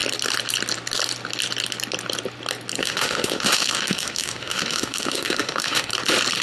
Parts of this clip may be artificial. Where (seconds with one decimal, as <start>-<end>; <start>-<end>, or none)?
2.8-5.9